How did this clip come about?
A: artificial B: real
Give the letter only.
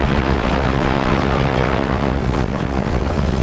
A